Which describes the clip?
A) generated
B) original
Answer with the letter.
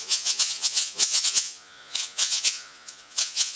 A